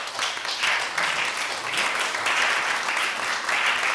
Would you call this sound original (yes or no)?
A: yes